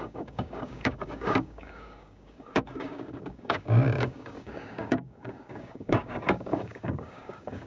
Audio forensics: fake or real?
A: fake